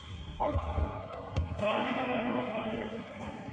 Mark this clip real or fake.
fake